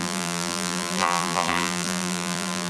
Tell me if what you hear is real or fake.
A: fake